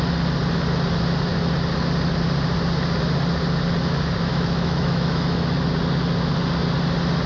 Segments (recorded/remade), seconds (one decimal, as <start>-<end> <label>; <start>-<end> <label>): 0.0-4.3 recorded; 4.3-5.7 remade; 5.7-7.3 recorded